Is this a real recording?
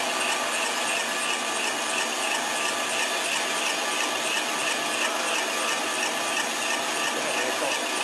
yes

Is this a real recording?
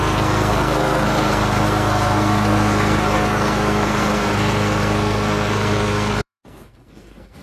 no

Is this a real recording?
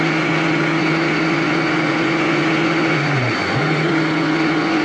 no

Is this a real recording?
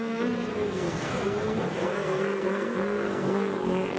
no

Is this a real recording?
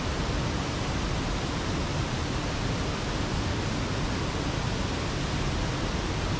yes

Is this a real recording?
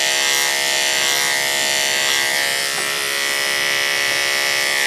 yes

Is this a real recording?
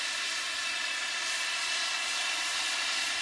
yes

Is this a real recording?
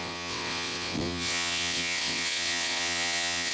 no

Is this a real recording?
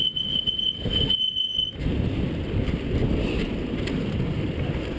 yes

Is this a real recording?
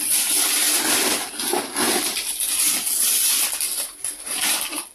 yes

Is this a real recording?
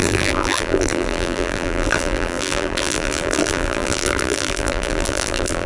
no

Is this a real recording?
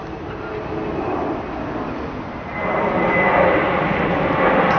yes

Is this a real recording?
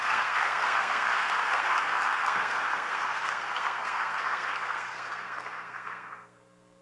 no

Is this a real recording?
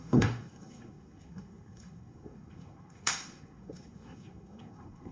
no